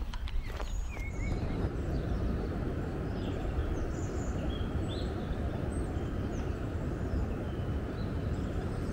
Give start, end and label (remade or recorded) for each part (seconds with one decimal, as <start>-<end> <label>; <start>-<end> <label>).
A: 0.0-3.6 remade; 3.6-6.3 recorded; 6.3-8.9 remade